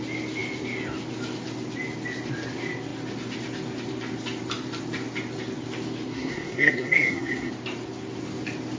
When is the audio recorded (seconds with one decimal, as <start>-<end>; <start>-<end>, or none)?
0.0-6.1; 7.5-8.8